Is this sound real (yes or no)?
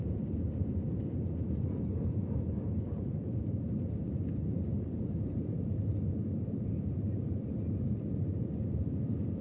no